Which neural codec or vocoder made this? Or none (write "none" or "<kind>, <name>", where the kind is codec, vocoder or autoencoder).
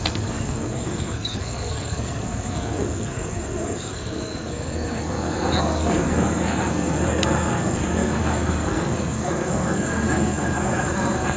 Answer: codec, SNAC